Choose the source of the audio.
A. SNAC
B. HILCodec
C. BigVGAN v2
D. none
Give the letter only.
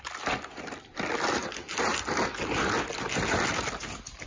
D